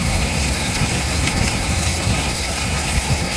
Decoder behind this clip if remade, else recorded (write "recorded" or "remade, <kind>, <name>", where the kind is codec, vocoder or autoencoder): remade, codec, SNAC